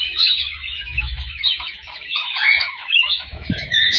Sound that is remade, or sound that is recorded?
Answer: remade